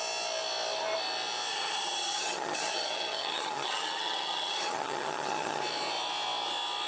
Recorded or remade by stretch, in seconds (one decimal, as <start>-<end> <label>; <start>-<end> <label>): 0.0-1.5 recorded; 1.5-5.6 remade; 5.6-6.9 recorded